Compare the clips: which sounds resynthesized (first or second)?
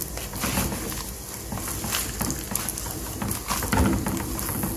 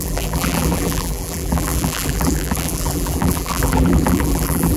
second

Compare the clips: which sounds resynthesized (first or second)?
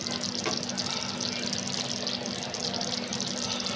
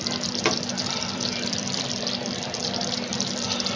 second